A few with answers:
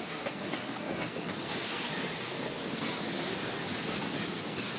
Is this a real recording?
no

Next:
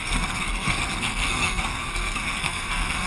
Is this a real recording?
no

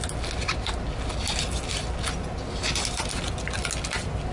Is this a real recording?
yes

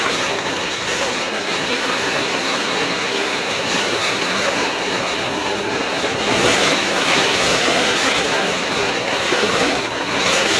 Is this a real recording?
no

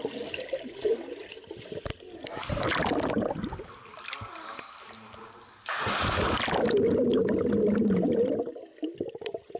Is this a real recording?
yes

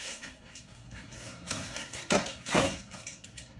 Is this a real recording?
no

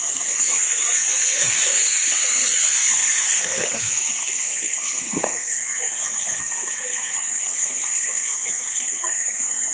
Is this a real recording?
no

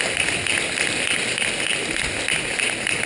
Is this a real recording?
yes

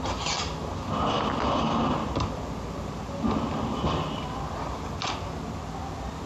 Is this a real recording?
yes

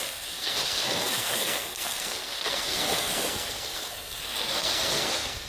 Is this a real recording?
no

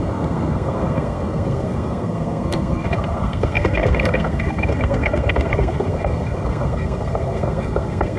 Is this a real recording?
no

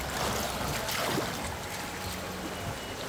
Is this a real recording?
yes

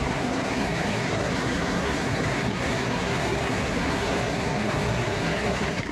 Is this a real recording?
no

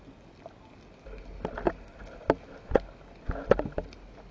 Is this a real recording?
yes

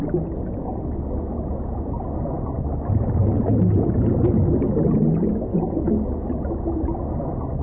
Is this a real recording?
yes